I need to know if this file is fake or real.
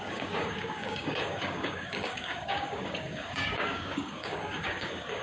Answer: fake